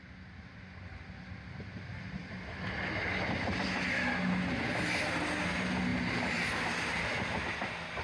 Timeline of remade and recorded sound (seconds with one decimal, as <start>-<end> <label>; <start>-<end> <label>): 0.0-8.0 recorded